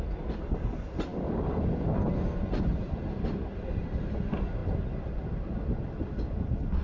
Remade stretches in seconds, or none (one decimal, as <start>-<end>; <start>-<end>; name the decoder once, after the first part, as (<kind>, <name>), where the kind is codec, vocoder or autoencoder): none